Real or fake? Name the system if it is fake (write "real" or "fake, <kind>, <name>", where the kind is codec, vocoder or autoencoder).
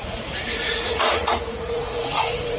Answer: fake, vocoder, Vocos